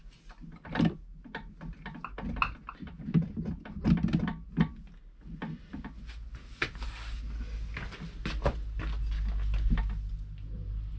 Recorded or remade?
recorded